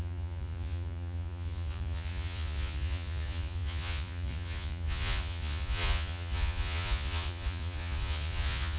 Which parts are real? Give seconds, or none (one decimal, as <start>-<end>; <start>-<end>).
none